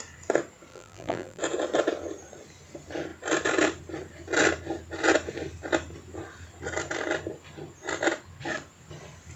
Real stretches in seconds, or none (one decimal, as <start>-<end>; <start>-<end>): 0.0-0.7; 1.4-9.4